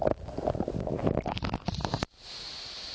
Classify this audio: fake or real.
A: real